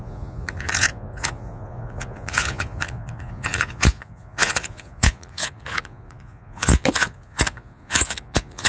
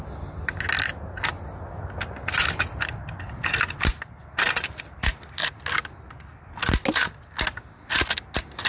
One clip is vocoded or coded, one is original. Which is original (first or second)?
second